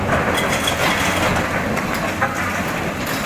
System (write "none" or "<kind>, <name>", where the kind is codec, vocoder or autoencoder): none